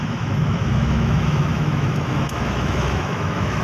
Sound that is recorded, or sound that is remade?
remade